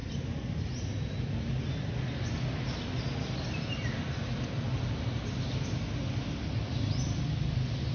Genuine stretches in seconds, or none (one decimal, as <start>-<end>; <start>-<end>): 0.0-7.9